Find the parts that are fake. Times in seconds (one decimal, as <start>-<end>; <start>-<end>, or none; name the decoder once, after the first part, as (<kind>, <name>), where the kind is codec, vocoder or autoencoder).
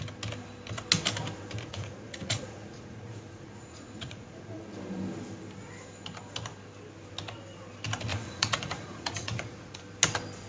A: 1.7-4.6 (vocoder, Vocos); 8.1-9.8